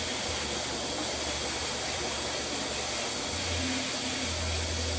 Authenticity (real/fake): real